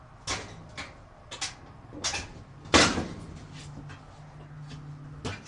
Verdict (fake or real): real